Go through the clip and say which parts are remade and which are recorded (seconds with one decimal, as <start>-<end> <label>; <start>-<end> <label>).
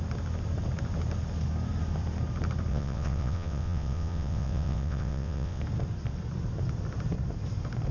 0.0-2.7 recorded; 2.7-5.6 remade; 5.6-7.9 recorded